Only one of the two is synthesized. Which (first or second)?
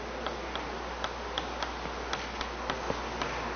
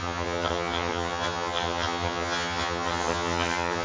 second